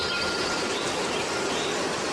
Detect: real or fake real